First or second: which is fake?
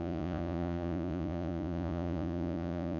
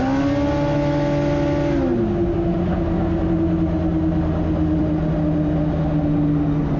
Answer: first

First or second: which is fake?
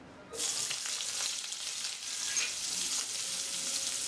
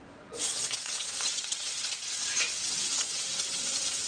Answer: second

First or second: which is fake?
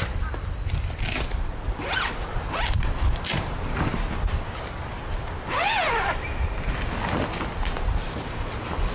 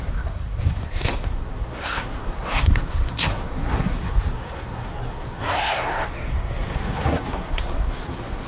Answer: second